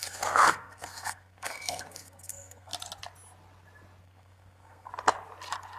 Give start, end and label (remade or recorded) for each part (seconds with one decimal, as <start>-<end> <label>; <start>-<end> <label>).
0.0-2.7 remade; 2.7-4.0 recorded; 4.0-4.9 remade; 4.9-5.8 recorded